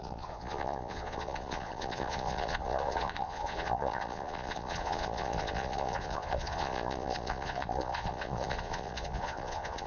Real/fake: fake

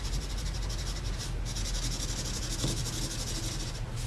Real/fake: real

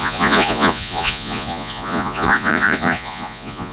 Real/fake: fake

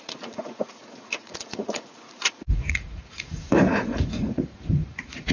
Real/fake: fake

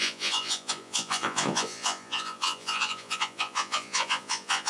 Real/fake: fake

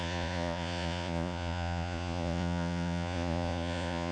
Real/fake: fake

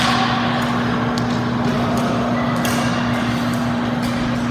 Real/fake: real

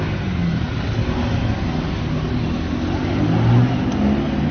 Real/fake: real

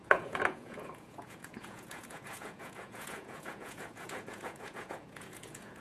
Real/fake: fake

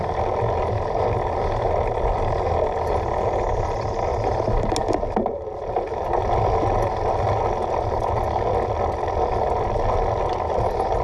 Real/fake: real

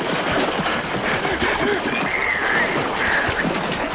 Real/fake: real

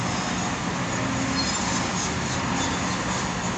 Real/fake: real